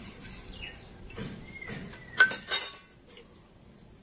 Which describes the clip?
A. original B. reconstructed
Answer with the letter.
B